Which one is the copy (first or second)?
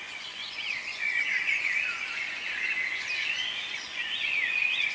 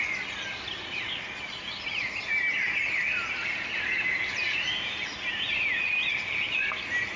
first